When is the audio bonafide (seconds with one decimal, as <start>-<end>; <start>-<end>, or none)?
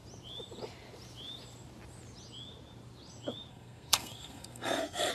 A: 0.0-3.5